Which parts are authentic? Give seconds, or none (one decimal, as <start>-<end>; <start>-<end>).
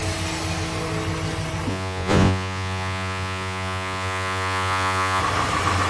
0.0-1.7; 5.2-5.9